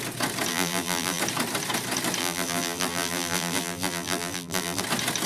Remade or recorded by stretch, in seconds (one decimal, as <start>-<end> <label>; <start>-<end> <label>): 0.0-0.5 recorded; 0.5-1.2 remade; 1.2-2.2 recorded; 2.2-4.8 remade; 4.8-5.3 recorded